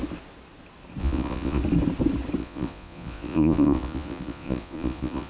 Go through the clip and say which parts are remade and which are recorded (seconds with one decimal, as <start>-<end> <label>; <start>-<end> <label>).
0.0-1.0 recorded; 1.0-1.6 remade; 1.6-2.4 recorded; 2.4-5.3 remade

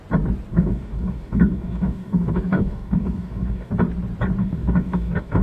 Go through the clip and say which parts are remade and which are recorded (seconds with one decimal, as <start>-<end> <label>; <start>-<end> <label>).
0.0-0.5 recorded; 0.5-3.7 remade; 3.7-4.4 recorded; 4.4-5.4 remade

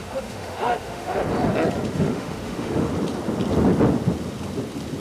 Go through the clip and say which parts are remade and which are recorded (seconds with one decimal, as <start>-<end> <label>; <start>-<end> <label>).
0.0-1.2 remade; 1.2-1.9 recorded; 1.9-2.9 remade; 2.9-5.0 recorded

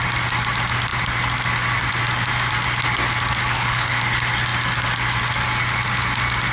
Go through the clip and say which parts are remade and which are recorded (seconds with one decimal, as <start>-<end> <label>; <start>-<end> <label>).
0.0-3.5 recorded; 3.5-4.0 remade; 4.0-6.5 recorded